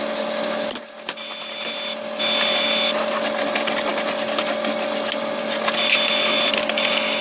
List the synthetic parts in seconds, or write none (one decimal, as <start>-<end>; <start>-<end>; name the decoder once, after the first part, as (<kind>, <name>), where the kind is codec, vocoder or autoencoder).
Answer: none